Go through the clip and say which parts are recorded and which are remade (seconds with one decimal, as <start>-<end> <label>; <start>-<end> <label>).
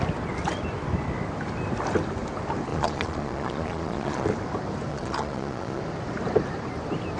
0.0-2.7 recorded; 2.7-4.3 remade; 4.3-4.9 recorded; 4.9-5.8 remade; 5.8-7.2 recorded